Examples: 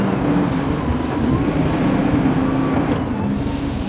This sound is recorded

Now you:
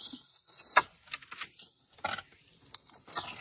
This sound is recorded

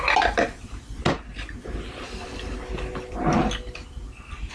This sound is recorded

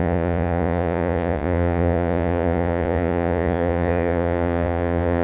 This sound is remade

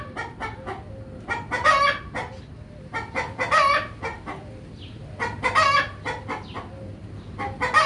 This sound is recorded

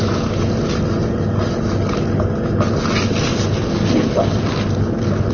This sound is recorded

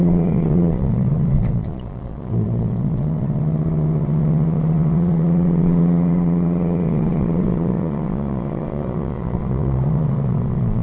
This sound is remade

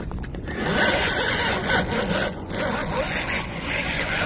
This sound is remade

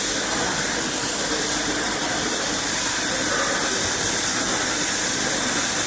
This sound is remade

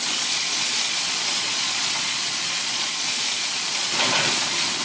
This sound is remade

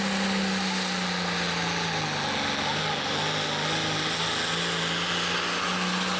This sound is recorded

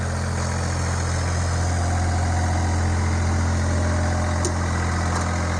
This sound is recorded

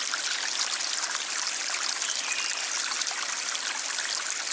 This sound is recorded